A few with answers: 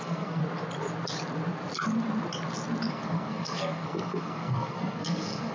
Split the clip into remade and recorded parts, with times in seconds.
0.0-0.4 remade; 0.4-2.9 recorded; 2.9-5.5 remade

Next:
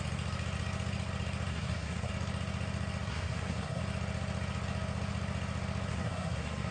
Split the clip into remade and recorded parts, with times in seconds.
0.0-1.5 recorded; 1.5-2.1 remade; 2.1-3.1 recorded; 3.1-3.8 remade; 3.8-5.9 recorded; 5.9-6.7 remade